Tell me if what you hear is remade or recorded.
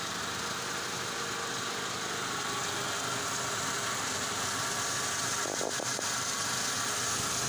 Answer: recorded